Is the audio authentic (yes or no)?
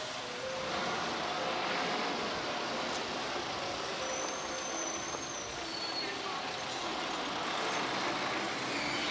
yes